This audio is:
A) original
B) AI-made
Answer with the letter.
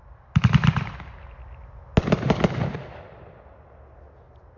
A